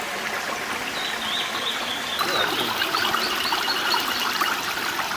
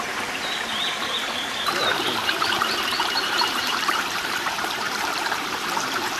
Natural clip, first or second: first